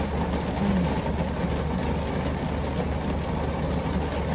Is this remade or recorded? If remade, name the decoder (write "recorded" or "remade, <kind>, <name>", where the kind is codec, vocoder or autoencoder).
recorded